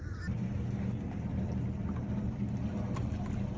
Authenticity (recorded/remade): recorded